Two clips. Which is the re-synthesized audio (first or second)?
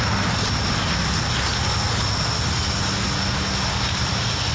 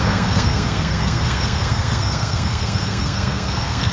second